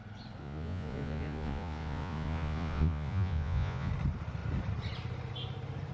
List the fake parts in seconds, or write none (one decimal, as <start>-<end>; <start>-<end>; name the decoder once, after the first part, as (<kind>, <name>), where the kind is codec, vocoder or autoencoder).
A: 0.4-3.9 (vocoder, Vocos)